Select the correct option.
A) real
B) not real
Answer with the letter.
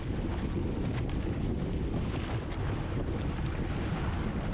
A